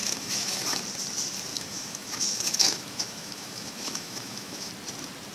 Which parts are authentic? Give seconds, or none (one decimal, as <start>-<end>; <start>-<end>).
0.8-1.5; 4.7-5.3